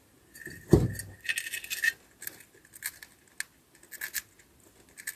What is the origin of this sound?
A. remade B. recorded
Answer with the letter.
B